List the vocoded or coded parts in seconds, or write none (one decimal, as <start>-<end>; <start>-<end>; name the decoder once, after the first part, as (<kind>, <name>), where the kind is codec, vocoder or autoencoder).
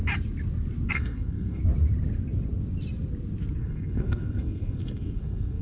0.9-1.6 (codec, SNAC); 3.6-5.6